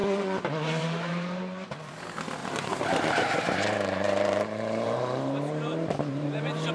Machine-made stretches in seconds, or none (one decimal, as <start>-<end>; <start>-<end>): 0.0-1.9; 2.4-6.7